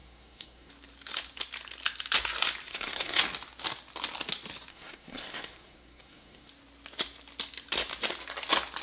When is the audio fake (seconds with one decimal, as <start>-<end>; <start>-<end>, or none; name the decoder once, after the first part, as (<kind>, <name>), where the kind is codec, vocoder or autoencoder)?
0.0-0.7 (codec, SNAC); 2.7-3.2; 4.7-6.5